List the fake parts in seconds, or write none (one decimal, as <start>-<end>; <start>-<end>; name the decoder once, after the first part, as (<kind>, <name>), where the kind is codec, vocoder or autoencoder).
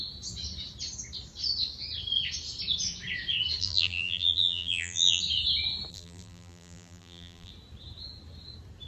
3.6-5.2 (vocoder, BigVGAN v2); 5.9-7.5